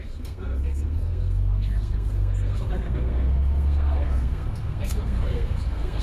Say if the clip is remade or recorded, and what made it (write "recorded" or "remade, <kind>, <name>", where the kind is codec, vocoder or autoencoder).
remade, codec, SNAC